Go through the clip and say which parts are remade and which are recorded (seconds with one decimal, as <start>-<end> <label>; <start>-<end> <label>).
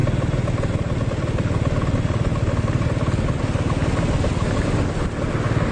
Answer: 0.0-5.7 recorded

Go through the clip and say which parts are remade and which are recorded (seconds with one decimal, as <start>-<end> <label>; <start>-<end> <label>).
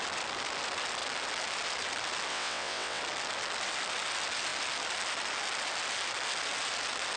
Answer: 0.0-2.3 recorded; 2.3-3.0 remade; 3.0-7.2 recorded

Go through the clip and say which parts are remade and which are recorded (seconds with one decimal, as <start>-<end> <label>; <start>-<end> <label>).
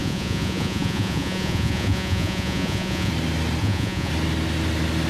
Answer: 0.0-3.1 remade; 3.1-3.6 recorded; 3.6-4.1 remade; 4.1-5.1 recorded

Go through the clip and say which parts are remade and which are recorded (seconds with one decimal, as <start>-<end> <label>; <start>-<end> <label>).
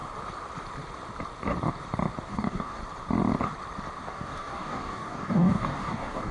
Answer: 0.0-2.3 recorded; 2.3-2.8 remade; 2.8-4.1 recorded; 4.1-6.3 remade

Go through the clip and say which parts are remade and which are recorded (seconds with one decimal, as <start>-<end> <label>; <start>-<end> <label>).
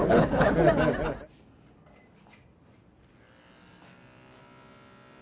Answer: 0.0-0.5 remade; 0.5-5.2 recorded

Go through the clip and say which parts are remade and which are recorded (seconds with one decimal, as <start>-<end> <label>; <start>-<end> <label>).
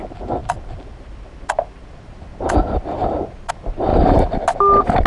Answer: 0.0-0.4 recorded; 0.4-3.5 remade; 3.5-3.9 recorded; 3.9-4.4 remade; 4.4-5.1 recorded